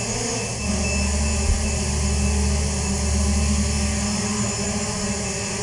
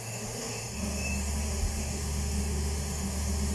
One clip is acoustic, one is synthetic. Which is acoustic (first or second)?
first